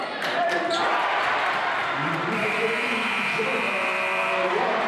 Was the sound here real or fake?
fake